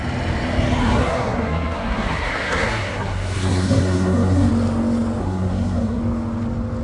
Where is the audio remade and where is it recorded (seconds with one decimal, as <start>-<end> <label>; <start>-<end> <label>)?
0.0-0.8 recorded; 0.8-4.5 remade; 4.5-5.2 recorded; 5.2-6.0 remade; 6.0-6.8 recorded